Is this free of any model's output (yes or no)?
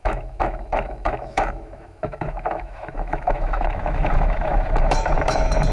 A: no